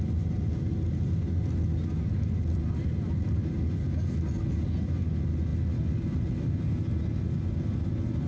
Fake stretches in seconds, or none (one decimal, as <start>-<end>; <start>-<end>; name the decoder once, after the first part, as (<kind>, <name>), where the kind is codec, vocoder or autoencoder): none